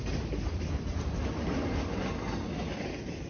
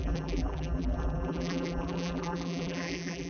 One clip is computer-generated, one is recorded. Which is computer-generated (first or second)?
second